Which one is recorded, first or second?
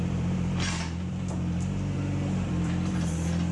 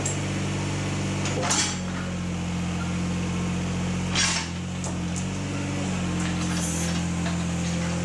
second